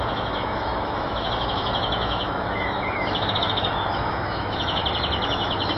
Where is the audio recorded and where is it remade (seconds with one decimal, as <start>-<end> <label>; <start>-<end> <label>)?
0.0-4.8 remade; 4.8-5.3 recorded; 5.3-5.8 remade